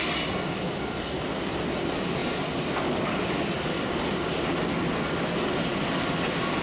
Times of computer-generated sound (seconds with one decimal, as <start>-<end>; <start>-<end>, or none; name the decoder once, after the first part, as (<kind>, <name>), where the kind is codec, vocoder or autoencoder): none